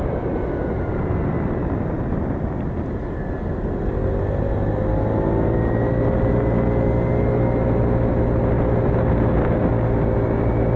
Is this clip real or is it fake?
real